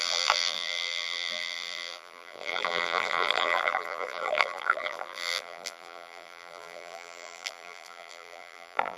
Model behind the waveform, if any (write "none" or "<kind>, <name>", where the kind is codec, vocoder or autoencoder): vocoder, BigVGAN v2